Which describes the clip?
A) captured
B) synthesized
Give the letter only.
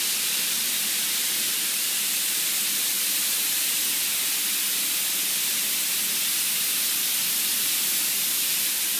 A